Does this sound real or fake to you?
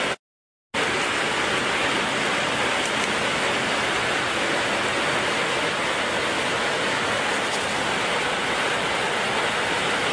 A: real